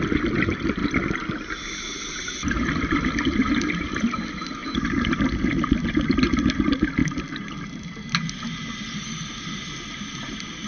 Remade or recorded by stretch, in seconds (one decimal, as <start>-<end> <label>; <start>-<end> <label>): 0.0-10.7 recorded